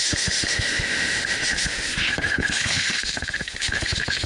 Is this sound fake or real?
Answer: fake